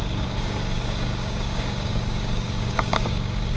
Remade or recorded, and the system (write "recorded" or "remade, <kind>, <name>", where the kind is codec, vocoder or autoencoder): remade, codec, DAC